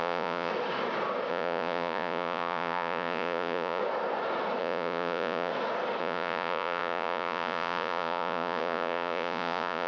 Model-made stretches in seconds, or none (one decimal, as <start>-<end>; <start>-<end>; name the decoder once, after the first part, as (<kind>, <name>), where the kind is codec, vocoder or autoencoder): 0.0-0.5 (vocoder, Vocos); 1.3-3.8; 4.6-5.5; 6.0-9.9